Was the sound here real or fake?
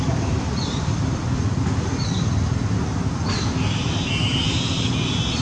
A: fake